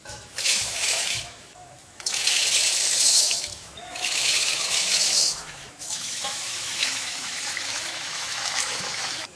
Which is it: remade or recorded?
remade